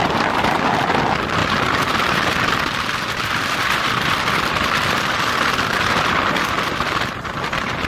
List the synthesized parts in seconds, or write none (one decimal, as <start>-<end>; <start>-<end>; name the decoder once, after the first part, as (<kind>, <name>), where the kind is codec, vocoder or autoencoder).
0.0-0.9 (vocoder, BigVGAN v2); 1.4-6.1